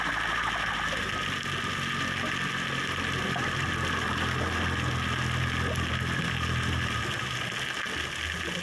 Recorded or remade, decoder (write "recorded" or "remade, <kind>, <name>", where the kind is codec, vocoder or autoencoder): recorded